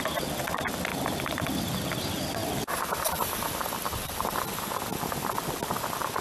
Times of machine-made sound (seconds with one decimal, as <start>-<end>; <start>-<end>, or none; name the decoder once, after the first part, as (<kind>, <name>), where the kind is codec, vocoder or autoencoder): 0.9-2.0 (vocoder, BigVGAN v2); 2.4-4.3